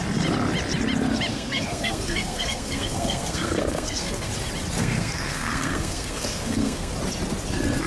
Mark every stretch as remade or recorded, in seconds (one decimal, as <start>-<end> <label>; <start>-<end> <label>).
0.0-1.3 recorded; 1.3-4.3 remade; 4.3-4.8 recorded; 4.8-6.9 remade; 6.9-7.9 recorded